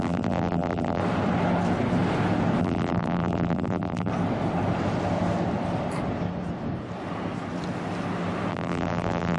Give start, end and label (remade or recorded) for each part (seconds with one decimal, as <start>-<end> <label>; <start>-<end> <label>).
0.0-1.0 remade; 1.0-2.6 recorded; 2.6-4.1 remade; 4.1-8.5 recorded; 8.5-9.4 remade